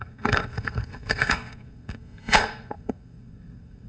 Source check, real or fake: fake